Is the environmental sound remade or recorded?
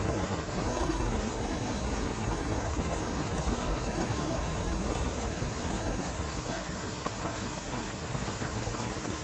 remade